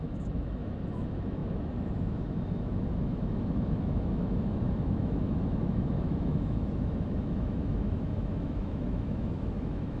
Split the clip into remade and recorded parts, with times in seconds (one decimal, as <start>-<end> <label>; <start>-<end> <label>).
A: 0.0-10.0 remade